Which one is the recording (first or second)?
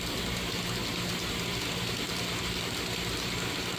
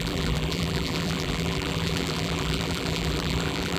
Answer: first